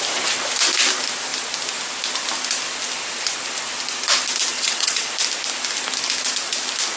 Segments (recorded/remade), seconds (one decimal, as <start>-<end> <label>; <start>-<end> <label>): 0.0-4.5 recorded; 4.5-5.1 remade; 5.1-7.0 recorded